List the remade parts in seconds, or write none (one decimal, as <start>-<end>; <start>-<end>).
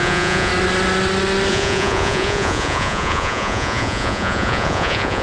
0.0-0.5; 1.5-5.2